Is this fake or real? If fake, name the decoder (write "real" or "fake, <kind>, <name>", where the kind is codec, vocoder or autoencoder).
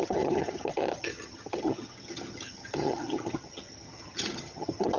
fake, vocoder, HiFi-GAN